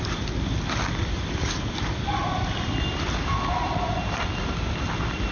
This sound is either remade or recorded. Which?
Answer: recorded